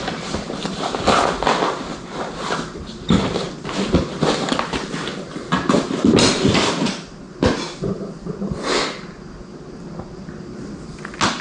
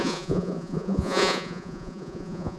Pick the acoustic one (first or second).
first